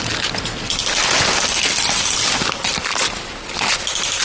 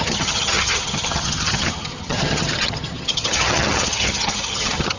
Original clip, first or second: first